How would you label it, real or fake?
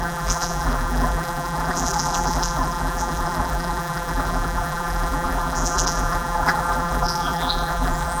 fake